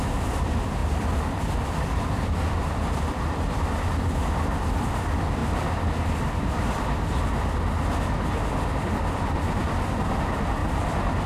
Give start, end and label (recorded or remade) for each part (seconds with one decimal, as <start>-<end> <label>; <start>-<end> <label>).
0.0-0.8 recorded; 0.8-3.8 remade; 3.8-9.6 recorded; 9.6-10.2 remade; 10.2-10.6 recorded; 10.6-11.3 remade